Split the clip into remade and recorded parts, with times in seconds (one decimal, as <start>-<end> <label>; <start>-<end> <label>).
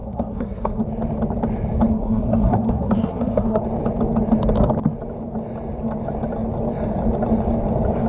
0.0-0.8 remade; 0.8-1.9 recorded; 1.9-3.6 remade; 3.6-8.1 recorded